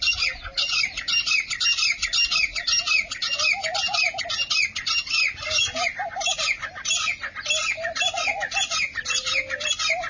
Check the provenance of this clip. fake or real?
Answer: real